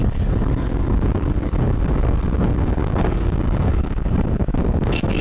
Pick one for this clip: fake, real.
fake